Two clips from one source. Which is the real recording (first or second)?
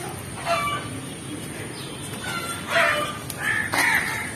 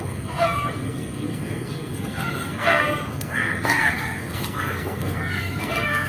first